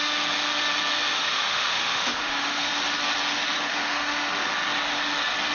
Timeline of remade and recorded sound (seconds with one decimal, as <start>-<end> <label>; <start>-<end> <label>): 0.0-1.1 recorded; 1.1-2.7 remade; 2.7-3.7 recorded; 3.7-4.3 remade; 4.3-5.5 recorded